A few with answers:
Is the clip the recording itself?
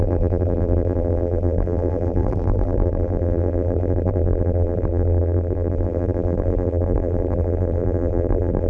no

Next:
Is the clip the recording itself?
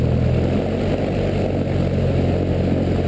yes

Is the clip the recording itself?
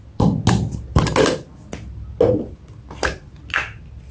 yes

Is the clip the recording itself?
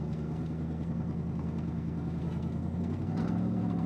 no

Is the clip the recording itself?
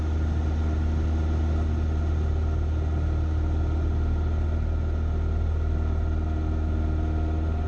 yes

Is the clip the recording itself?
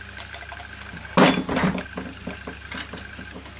yes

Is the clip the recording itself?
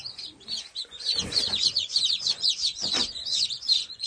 no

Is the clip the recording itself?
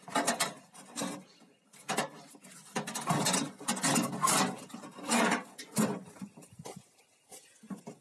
yes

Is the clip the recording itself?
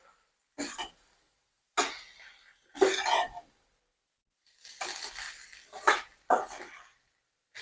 yes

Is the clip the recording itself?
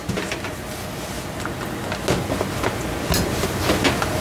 yes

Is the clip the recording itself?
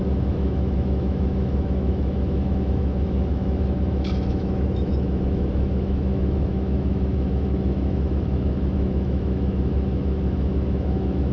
no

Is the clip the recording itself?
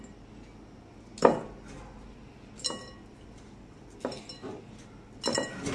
yes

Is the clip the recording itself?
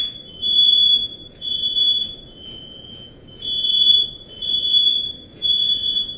no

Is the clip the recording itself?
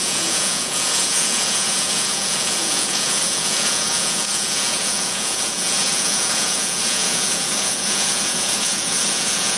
no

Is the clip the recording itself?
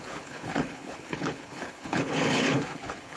no